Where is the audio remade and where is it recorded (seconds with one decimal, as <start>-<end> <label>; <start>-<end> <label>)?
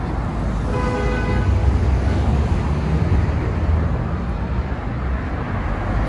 0.0-1.6 recorded; 1.6-2.6 remade; 2.6-6.1 recorded